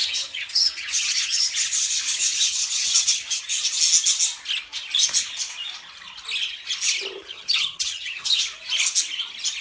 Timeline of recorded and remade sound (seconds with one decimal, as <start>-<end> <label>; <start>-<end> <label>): 0.0-3.4 remade; 3.4-7.3 recorded; 7.3-8.4 remade; 8.4-9.6 recorded